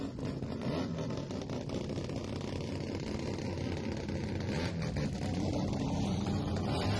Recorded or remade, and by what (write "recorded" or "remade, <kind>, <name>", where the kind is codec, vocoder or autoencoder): recorded